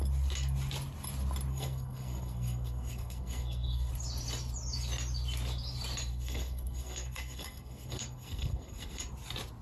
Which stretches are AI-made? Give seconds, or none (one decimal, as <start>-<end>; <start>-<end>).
1.5-3.9; 6.1-9.0